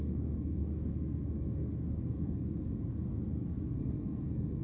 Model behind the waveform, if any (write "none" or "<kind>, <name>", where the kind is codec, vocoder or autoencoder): codec, SNAC